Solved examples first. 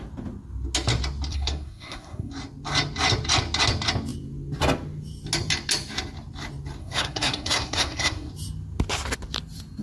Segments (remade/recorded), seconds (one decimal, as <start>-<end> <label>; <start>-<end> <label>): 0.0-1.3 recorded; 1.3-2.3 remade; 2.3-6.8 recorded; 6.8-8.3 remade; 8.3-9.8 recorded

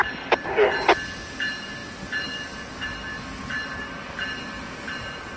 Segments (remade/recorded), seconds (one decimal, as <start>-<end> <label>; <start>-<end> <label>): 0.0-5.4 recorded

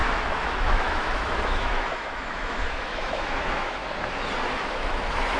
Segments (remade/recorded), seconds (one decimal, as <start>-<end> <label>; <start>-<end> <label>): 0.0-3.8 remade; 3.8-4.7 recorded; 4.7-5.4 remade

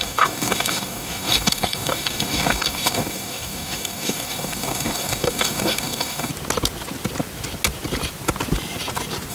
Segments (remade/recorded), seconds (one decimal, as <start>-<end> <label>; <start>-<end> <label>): 0.0-6.3 remade; 6.3-9.3 recorded

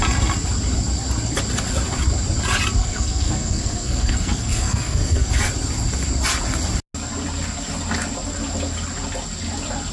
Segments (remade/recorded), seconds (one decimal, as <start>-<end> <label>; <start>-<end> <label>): 0.0-2.8 recorded; 2.8-5.3 remade; 5.3-9.9 recorded

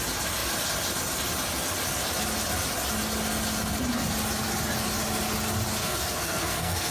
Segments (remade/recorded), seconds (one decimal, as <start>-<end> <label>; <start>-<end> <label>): 0.0-5.8 recorded; 5.8-6.9 remade